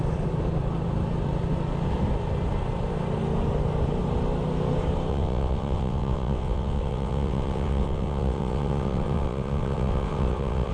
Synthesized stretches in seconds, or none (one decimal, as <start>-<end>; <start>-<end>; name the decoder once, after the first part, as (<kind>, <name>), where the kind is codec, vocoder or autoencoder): 5.1-10.7 (vocoder, WaveNeXt)